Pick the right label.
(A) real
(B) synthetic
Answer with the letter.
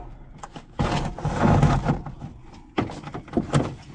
A